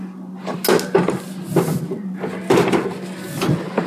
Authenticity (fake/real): real